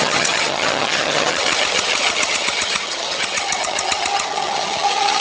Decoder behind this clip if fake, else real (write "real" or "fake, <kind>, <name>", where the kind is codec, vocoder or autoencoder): fake, vocoder, HiFi-GAN